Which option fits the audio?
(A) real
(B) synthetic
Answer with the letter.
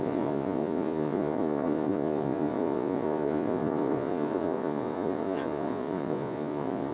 B